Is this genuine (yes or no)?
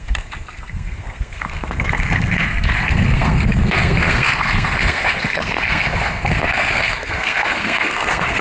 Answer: no